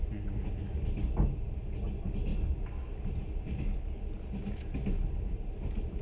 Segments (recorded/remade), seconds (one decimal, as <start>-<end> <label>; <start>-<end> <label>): 0.0-2.3 recorded; 2.3-3.8 remade; 3.8-6.0 recorded